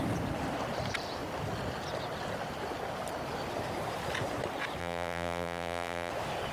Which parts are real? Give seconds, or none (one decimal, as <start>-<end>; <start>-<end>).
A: 0.0-4.8; 6.1-6.5